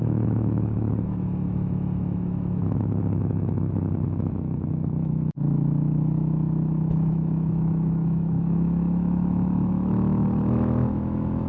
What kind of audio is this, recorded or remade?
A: remade